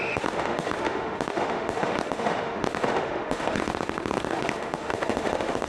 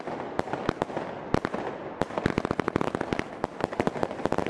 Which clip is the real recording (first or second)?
second